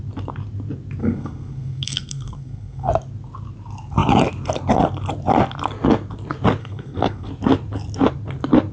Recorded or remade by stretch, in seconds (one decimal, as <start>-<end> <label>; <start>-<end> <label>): 0.0-1.0 recorded; 1.0-2.9 remade; 2.9-6.6 recorded; 6.6-7.3 remade; 7.3-8.7 recorded